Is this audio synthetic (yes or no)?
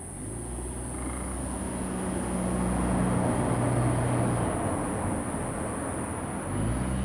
no